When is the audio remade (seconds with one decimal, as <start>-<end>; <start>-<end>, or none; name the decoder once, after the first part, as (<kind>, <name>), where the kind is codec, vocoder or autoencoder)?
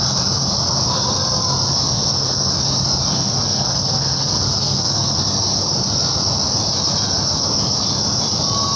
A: 1.9-2.5 (codec, SNAC); 3.1-5.2